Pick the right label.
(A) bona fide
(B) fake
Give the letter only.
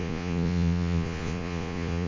B